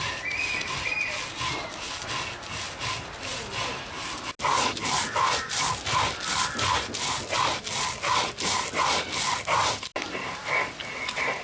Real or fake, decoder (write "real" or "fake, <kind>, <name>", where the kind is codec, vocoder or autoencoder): real